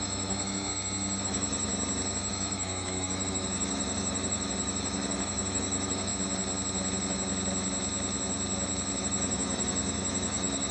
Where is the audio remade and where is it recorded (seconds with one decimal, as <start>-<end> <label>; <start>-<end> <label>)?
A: 0.0-0.7 remade; 0.7-1.2 recorded; 1.2-1.7 remade; 1.7-2.3 recorded; 2.3-6.1 remade; 6.1-9.0 recorded; 9.0-10.7 remade